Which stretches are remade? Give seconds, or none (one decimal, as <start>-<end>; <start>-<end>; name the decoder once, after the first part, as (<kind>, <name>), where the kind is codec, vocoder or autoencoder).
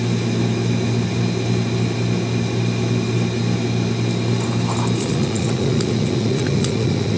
5.0-7.2 (vocoder, Vocos)